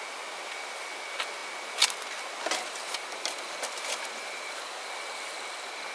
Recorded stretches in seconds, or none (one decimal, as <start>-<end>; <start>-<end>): 0.0-5.9